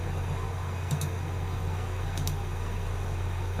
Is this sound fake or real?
fake